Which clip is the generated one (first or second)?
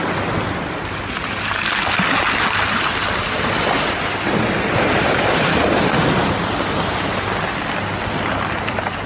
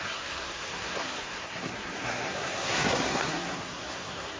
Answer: second